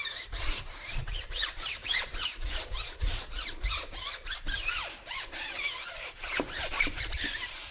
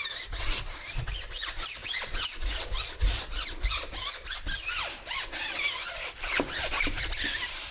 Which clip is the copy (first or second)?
first